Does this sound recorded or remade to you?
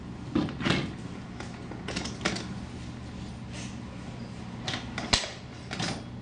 recorded